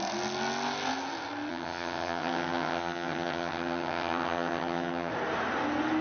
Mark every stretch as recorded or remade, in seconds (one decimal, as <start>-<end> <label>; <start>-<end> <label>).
0.0-1.5 recorded; 1.5-5.1 remade; 5.1-6.0 recorded